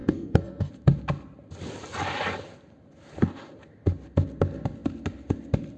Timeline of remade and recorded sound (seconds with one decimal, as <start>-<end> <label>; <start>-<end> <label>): 0.0-0.7 remade; 0.7-5.8 recorded